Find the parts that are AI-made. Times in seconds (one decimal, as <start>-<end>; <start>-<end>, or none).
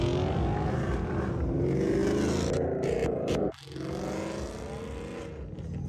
none